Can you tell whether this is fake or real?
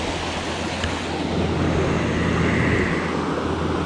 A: real